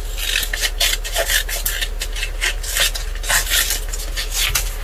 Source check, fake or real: real